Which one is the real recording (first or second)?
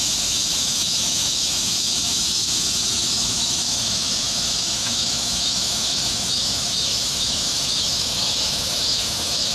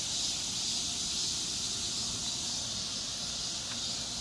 second